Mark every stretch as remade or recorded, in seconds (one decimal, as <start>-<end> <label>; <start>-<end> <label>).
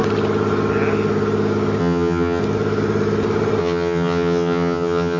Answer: 0.0-1.8 recorded; 1.8-2.4 remade; 2.4-3.6 recorded; 3.6-5.2 remade